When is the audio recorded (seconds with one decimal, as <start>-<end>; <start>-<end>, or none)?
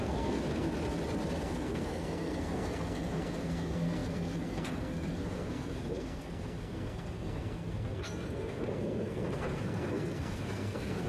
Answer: 0.7-1.4